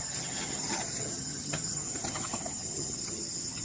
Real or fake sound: fake